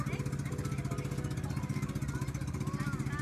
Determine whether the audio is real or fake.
real